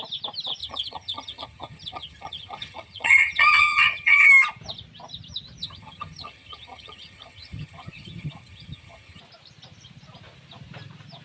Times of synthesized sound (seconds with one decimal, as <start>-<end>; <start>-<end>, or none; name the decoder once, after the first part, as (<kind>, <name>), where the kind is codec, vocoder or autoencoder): 0.6-4.3 (vocoder, HiFi-GAN); 5.6-9.2